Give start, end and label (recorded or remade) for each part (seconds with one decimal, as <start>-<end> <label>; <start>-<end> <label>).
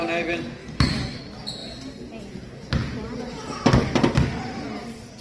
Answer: 0.0-0.6 recorded; 0.6-1.2 remade; 1.2-5.2 recorded